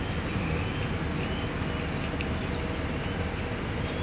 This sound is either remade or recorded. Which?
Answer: recorded